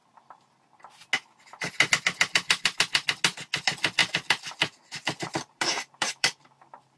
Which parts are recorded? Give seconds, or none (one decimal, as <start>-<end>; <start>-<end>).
0.0-4.0